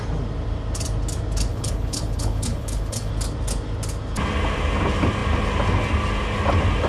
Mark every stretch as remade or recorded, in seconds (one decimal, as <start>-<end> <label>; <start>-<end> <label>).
0.0-1.5 recorded; 1.5-3.1 remade; 3.1-6.9 recorded